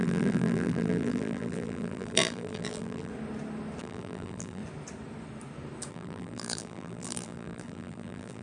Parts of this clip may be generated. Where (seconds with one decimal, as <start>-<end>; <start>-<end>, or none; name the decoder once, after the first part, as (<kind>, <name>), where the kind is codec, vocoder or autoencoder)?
0.0-3.1 (vocoder, BigVGAN v2); 3.8-4.6; 5.9-8.4